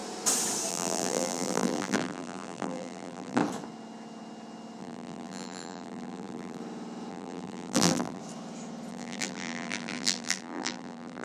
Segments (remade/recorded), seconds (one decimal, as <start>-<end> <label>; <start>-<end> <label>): 0.0-0.7 recorded; 0.7-3.4 remade; 3.4-4.8 recorded; 4.8-6.6 remade; 6.6-7.1 recorded; 7.1-8.2 remade; 8.2-8.9 recorded; 8.9-11.2 remade